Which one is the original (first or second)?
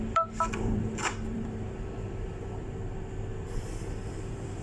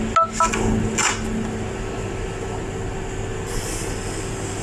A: second